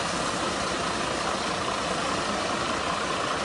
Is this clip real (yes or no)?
yes